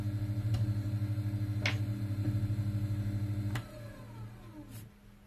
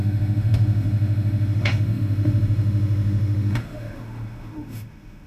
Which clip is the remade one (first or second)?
second